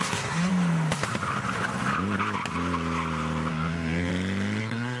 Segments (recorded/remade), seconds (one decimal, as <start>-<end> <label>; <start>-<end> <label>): 0.0-0.5 remade; 0.5-3.5 recorded; 3.5-4.1 remade; 4.1-4.6 recorded; 4.6-5.0 remade